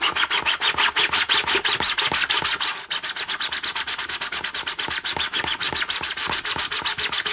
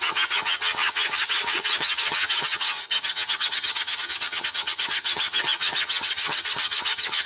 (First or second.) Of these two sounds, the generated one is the second